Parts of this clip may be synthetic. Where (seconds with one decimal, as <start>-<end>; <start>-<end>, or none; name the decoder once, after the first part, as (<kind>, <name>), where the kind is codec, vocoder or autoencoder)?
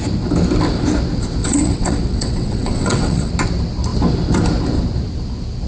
1.4-3.3 (vocoder, WaveNeXt)